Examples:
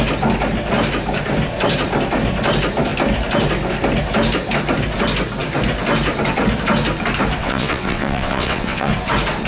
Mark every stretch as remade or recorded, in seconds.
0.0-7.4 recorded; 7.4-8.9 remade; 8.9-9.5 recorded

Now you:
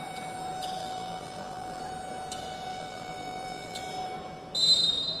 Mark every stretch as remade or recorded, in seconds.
0.0-0.8 recorded; 0.8-1.8 remade; 1.8-2.7 recorded; 2.7-3.8 remade; 3.8-5.2 recorded